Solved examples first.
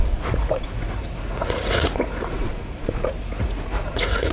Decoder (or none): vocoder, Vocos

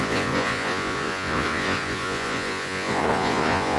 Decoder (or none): vocoder, Vocos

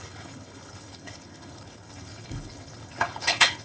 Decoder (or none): codec, HILCodec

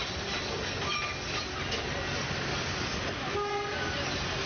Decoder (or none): none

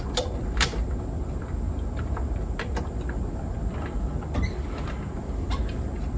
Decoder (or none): vocoder, BigVGAN v2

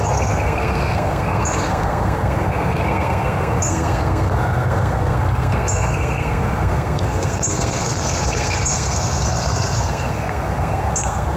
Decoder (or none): codec, SNAC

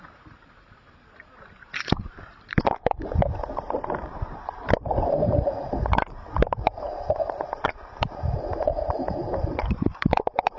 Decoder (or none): vocoder, BigVGAN v2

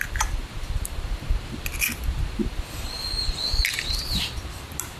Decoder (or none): none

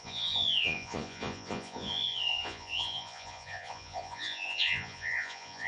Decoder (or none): vocoder, Vocos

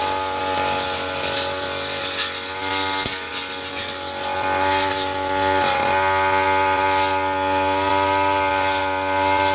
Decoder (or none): none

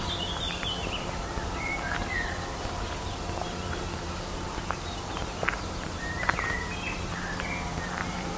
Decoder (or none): vocoder, BigVGAN v2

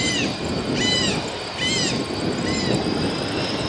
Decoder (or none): none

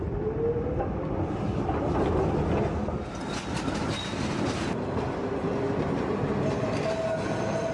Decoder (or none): none